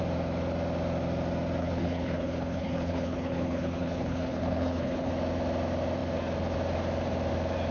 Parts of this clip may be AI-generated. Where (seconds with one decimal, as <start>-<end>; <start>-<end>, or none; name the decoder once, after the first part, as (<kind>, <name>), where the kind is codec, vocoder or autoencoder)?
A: 1.6-5.1 (codec, HILCodec)